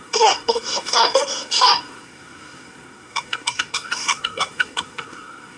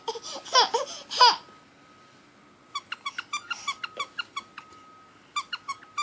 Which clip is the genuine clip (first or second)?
second